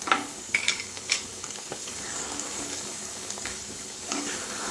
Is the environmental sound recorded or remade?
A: remade